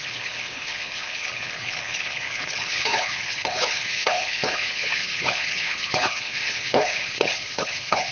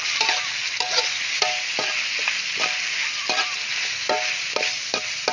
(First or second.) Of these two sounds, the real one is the second